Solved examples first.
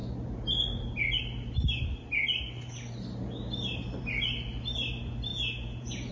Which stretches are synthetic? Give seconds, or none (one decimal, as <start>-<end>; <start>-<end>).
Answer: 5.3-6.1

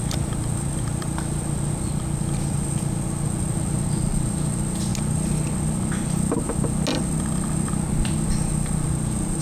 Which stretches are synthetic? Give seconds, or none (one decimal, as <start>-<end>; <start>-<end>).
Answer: none

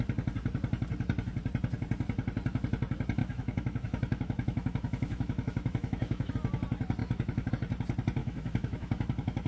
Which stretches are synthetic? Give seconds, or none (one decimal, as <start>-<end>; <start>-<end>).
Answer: 3.2-6.3; 7.0-7.5; 8.2-9.5

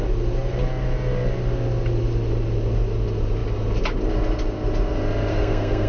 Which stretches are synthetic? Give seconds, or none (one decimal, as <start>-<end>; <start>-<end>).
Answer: 5.3-5.9

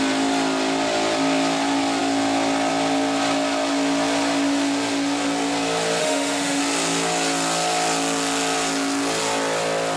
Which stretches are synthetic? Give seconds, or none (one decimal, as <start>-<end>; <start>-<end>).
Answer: 6.0-6.6

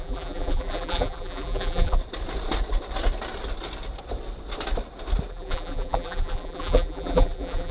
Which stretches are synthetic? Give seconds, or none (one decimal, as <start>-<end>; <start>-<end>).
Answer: 0.0-2.0; 5.3-7.7